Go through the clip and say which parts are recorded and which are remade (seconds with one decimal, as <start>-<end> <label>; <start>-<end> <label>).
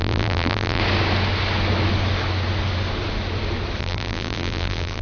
0.0-0.8 remade; 0.8-3.8 recorded; 3.8-5.0 remade